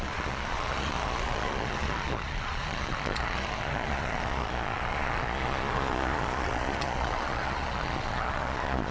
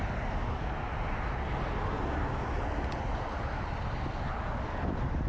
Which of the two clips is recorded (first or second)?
second